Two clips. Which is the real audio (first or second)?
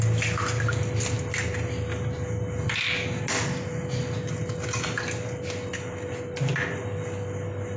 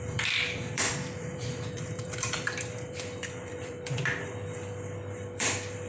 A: first